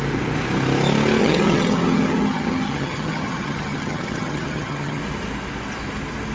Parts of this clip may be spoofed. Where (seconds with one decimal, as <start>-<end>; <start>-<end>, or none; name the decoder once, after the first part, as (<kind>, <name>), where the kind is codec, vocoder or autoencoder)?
1.2-5.0 (vocoder, HiFi-GAN)